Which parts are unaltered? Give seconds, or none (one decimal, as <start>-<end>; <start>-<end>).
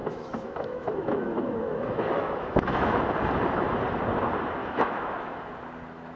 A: 3.0-4.6; 5.5-6.2